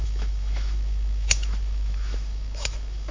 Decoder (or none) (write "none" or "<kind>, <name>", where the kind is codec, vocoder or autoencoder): autoencoder, DAC-VAE